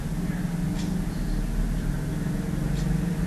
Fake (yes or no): no